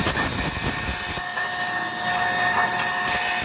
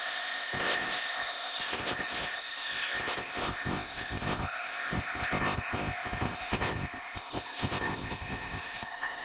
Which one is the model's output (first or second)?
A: second